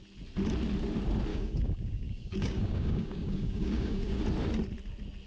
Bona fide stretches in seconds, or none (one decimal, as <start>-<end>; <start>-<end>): 0.0-1.3; 4.2-5.3